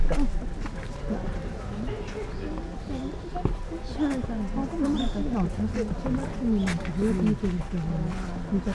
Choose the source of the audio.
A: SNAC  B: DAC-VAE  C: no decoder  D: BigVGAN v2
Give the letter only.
C